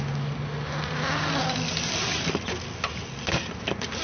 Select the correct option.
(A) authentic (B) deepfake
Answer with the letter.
A